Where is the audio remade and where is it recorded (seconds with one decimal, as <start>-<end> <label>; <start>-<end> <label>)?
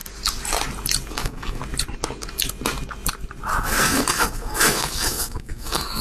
0.0-1.1 recorded; 1.1-1.6 remade; 1.6-3.6 recorded; 3.6-6.0 remade